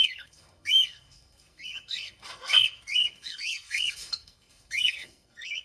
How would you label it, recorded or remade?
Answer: remade